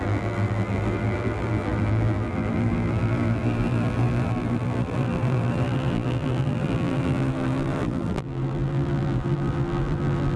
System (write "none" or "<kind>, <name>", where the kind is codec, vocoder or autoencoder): vocoder, BigVGAN v2